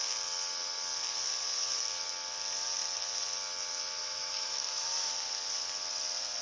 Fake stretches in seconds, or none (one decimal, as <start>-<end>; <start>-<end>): 4.0-5.1